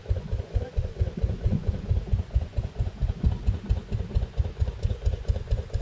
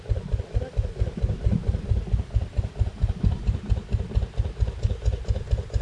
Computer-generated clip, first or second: first